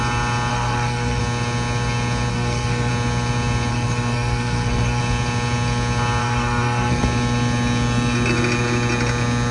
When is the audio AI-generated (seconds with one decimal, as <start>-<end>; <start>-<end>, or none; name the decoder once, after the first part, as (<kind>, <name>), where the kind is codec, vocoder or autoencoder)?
0.5-1.2 (codec, SNAC); 2.3-2.9; 3.7-5.0; 6.2-7.0